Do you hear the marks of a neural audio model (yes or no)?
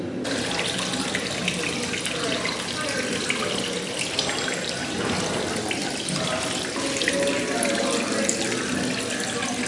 no